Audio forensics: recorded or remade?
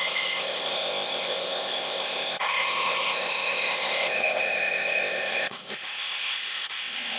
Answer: remade